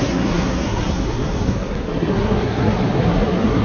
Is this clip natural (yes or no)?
no